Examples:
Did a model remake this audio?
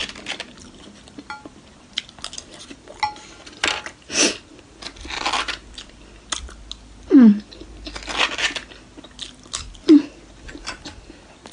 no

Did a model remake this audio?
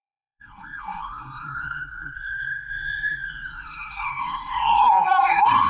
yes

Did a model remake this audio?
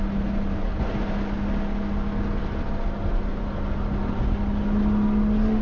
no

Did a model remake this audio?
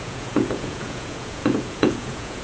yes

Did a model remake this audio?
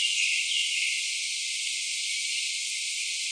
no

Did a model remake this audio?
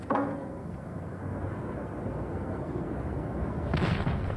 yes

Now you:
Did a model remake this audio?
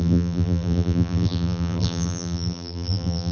yes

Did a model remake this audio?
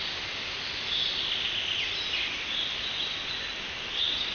no